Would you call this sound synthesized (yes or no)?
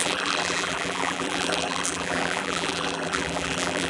yes